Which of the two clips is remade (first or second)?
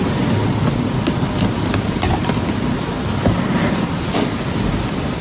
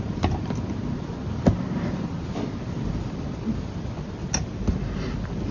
second